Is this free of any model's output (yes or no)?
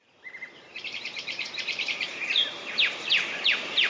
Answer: no